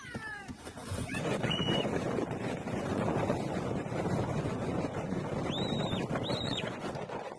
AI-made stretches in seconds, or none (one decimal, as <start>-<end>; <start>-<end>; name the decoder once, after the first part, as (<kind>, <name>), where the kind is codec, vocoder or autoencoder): 0.0-5.3 (vocoder, Vocos); 6.4-7.4